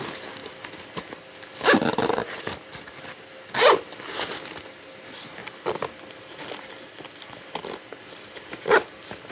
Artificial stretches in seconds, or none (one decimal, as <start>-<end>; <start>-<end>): 0.4-1.2; 2.2-3.3